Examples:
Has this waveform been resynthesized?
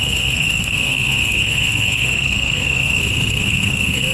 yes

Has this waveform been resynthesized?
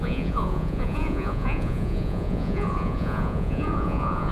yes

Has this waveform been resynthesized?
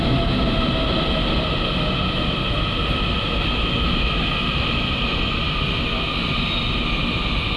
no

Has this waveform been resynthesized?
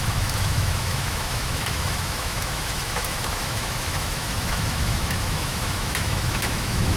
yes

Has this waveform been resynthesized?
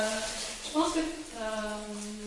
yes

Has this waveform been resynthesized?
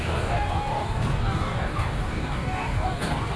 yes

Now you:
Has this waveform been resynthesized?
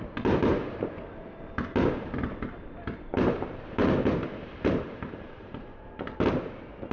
yes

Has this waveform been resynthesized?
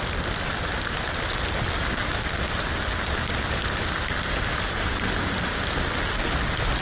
no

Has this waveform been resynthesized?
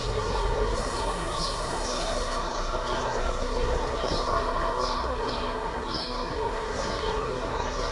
yes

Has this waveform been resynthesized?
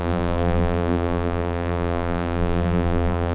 yes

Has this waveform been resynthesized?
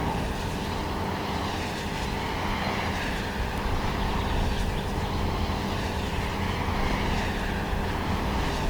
no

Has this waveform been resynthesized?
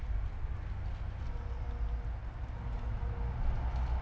no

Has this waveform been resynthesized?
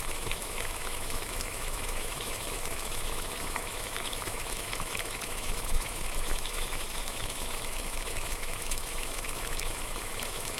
yes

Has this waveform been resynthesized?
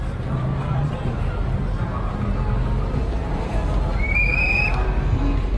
no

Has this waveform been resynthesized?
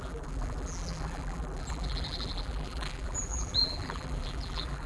yes